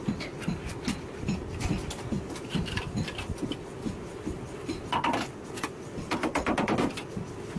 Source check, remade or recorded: recorded